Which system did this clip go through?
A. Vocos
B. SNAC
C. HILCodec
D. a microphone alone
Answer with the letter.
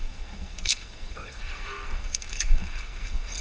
B